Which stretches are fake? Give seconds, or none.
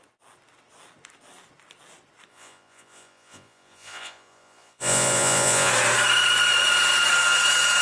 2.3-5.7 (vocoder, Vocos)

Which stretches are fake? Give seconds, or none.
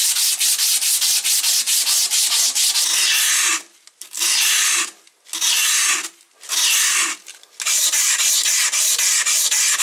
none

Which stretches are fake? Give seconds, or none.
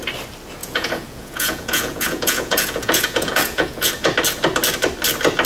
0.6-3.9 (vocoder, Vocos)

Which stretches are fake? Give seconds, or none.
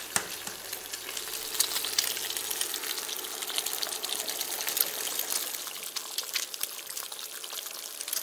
none